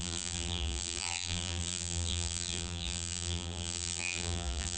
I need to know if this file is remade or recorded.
remade